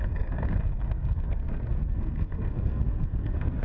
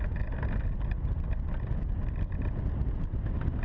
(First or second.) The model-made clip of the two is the first